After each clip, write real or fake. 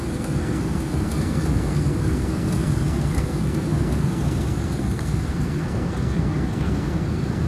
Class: fake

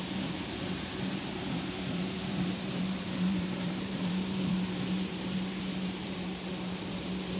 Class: fake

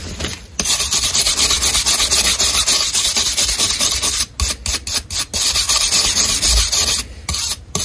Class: real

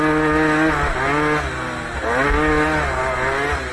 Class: real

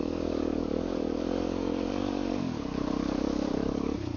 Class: fake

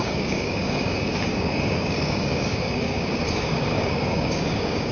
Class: fake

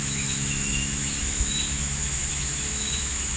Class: fake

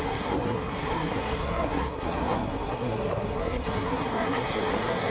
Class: fake